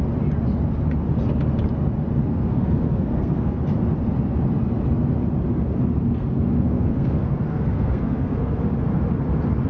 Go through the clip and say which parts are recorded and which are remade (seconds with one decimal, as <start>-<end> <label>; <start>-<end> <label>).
0.0-2.2 recorded; 2.2-3.6 remade; 3.6-6.1 recorded; 6.1-8.6 remade; 8.6-9.7 recorded

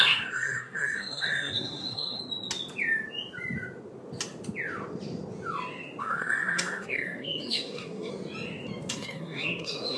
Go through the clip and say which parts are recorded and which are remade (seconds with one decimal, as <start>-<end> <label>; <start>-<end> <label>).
0.0-2.2 remade; 2.2-6.0 recorded; 6.0-8.1 remade; 8.1-8.9 recorded; 8.9-10.0 remade

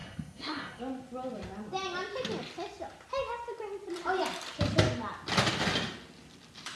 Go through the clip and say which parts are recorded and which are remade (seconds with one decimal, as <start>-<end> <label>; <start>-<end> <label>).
0.0-0.8 remade; 0.8-6.8 recorded

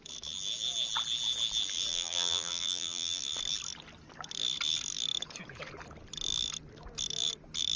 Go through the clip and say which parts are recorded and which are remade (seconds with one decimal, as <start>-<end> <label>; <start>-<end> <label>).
0.0-1.9 recorded; 1.9-3.2 remade; 3.2-7.8 recorded

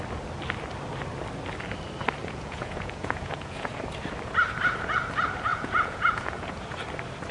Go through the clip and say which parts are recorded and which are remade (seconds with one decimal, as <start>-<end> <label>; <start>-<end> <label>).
0.0-2.2 recorded; 2.2-3.8 remade; 3.8-5.5 recorded; 5.5-6.5 remade; 6.5-7.3 recorded

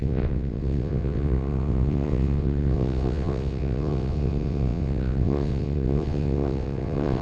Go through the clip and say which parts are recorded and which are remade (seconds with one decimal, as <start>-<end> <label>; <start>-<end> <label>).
0.0-7.2 remade

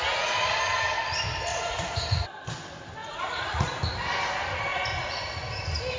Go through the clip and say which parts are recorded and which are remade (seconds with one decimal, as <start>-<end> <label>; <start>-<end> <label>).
0.0-1.5 recorded; 1.5-2.2 remade; 2.2-3.0 recorded; 3.0-3.8 remade; 3.8-4.7 recorded; 4.7-5.2 remade; 5.2-6.0 recorded

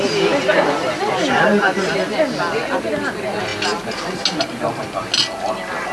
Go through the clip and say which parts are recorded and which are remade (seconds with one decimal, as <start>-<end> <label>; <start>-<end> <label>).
0.0-5.9 recorded